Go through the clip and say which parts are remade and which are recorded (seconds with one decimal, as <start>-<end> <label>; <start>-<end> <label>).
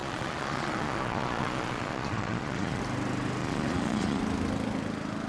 0.0-2.8 remade; 2.8-3.4 recorded; 3.4-4.2 remade; 4.2-5.3 recorded